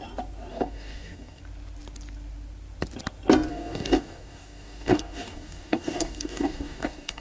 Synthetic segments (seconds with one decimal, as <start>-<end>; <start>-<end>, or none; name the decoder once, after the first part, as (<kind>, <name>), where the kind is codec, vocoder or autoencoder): 0.5-1.4 (codec, DAC); 3.5-7.2